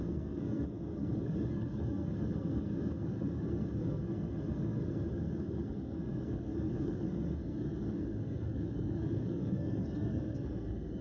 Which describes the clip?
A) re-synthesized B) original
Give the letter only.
A